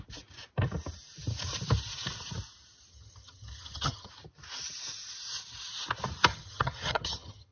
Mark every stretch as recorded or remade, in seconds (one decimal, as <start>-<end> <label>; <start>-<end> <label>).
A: 0.0-2.9 recorded; 2.9-4.1 remade; 4.1-6.3 recorded; 6.3-7.5 remade